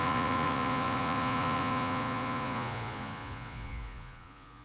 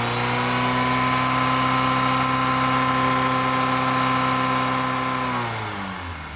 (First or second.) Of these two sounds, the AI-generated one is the first